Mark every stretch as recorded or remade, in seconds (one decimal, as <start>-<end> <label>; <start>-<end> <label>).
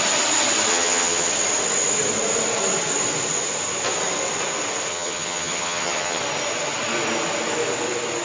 0.0-0.7 recorded; 0.7-1.3 remade; 1.3-4.9 recorded; 4.9-6.2 remade; 6.2-8.2 recorded